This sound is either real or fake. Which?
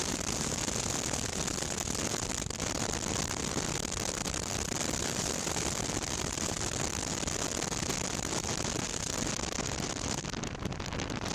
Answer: fake